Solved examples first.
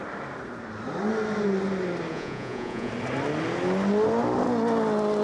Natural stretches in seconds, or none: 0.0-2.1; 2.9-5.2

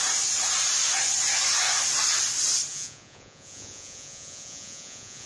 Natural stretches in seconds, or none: 0.0-2.7

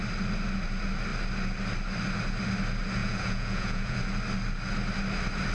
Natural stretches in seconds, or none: 0.0-3.0; 4.0-5.5

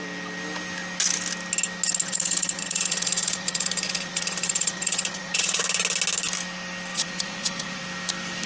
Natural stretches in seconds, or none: 0.0-2.0; 5.6-6.9; 7.8-8.5

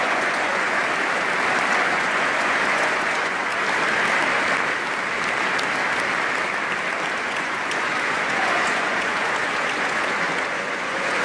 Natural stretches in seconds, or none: 0.8-1.7; 3.5-7.2